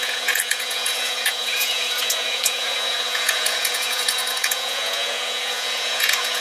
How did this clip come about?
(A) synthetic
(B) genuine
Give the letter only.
A